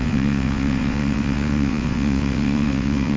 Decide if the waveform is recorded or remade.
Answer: remade